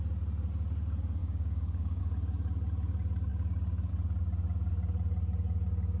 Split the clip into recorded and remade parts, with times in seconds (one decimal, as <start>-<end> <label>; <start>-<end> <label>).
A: 0.0-1.2 recorded; 1.2-2.0 remade; 2.0-6.0 recorded